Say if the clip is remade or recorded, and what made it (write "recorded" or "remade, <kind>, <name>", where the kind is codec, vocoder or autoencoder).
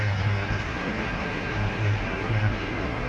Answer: remade, codec, SNAC